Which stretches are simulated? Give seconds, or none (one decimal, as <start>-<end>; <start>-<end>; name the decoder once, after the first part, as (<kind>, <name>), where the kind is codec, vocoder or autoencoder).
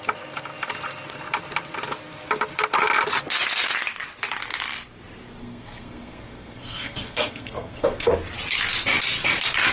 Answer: 5.4-8.1 (codec, SNAC)